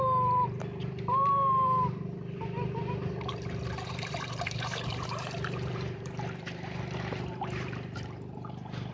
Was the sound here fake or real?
fake